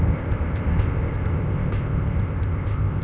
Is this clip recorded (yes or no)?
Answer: no